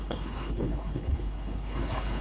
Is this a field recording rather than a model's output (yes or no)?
no